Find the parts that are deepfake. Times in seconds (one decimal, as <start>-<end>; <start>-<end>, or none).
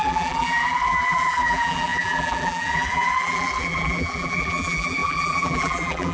0.0-6.1